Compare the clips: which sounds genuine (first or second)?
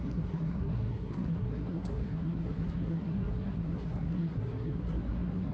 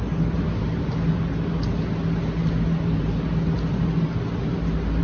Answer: second